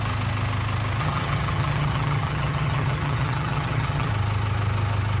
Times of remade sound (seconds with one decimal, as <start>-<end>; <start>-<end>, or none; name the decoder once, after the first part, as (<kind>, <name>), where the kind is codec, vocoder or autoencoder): 1.0-4.1 (vocoder, HiFi-GAN)